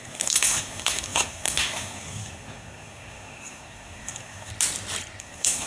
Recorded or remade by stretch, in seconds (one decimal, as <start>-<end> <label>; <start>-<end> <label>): 0.0-4.5 remade; 4.5-5.2 recorded; 5.2-5.7 remade